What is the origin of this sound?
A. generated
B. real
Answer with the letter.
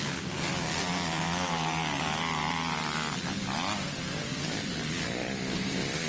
B